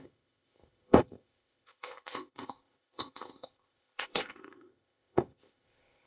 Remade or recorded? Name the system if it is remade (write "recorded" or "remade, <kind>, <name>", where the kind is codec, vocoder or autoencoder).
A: remade, codec, ZipCodec